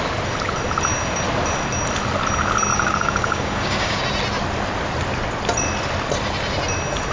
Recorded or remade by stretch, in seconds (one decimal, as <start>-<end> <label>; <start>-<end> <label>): 0.0-2.7 recorded; 2.7-4.0 remade; 4.0-7.1 recorded